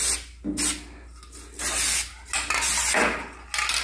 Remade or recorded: recorded